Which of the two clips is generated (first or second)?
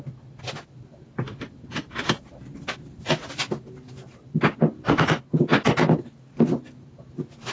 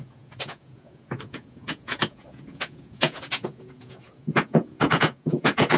second